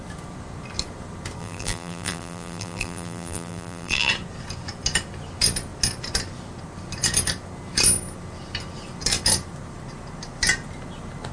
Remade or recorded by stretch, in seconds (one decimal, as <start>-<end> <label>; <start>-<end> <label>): 0.0-1.4 recorded; 1.4-4.1 remade; 4.1-11.3 recorded